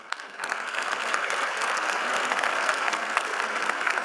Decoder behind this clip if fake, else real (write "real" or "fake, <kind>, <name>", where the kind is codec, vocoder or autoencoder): fake, codec, SNAC